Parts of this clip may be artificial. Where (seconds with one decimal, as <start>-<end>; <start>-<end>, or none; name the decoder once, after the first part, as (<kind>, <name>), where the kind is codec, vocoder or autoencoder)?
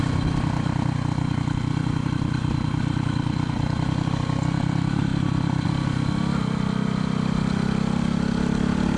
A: none